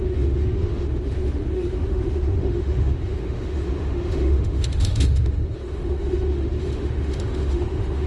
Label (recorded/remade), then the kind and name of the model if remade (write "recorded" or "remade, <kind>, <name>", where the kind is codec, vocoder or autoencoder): remade, autoencoder, DAC-VAE